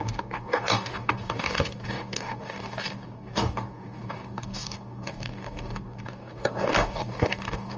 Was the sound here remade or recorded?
remade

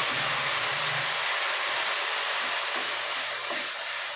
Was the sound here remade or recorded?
recorded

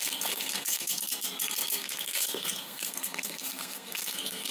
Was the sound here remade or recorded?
remade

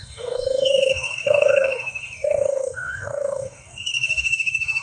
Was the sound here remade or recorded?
remade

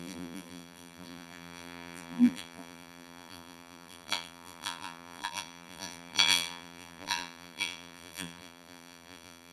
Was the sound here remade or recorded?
remade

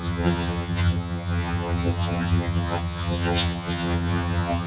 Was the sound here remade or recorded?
remade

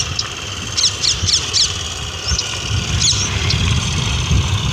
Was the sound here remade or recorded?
recorded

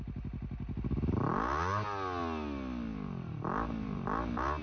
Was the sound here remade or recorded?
recorded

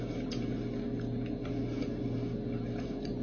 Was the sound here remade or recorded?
recorded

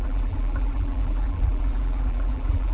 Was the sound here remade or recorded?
remade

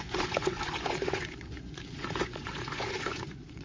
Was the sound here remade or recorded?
remade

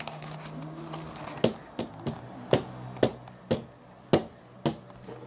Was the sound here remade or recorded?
recorded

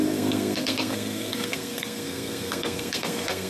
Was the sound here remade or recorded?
remade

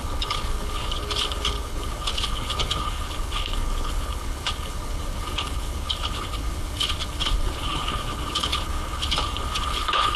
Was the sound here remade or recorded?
remade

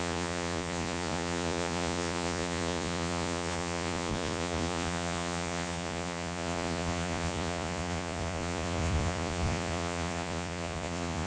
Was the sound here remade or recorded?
remade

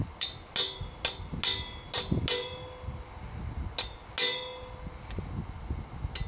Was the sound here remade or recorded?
recorded